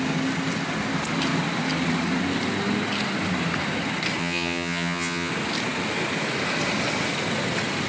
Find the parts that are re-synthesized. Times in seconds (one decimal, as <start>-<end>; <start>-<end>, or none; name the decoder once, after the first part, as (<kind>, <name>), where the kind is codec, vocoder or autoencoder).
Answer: 4.2-5.3 (vocoder, HiFi-GAN)